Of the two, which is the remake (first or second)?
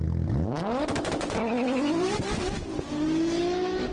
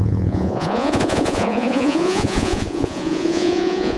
second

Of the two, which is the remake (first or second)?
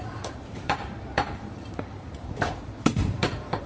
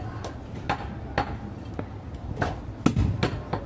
first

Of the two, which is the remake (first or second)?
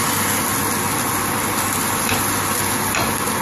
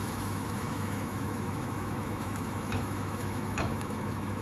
second